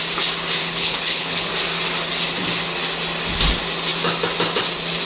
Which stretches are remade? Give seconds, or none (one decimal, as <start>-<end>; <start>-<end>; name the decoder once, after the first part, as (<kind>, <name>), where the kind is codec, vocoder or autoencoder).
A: 0.6-1.5 (codec, HILCodec)

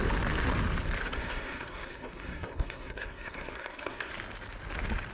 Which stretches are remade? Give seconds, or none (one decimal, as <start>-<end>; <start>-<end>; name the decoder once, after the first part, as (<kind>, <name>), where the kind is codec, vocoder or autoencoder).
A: 1.0-4.1 (codec, SNAC)